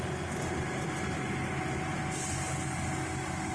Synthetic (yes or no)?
no